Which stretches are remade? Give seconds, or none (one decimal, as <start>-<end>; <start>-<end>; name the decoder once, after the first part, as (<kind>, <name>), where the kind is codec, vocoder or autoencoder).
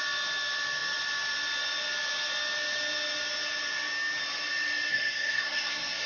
4.9-6.1 (codec, SNAC)